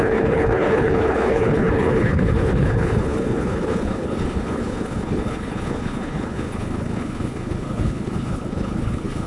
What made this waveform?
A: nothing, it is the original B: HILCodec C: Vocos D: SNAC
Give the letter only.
B